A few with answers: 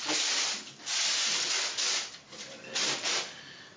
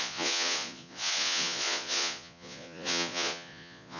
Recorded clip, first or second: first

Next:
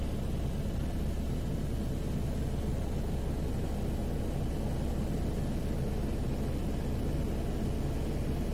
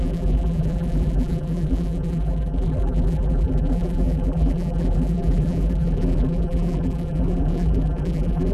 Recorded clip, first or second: first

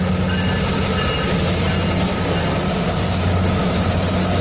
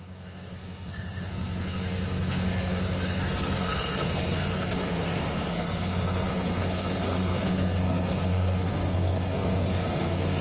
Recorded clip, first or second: first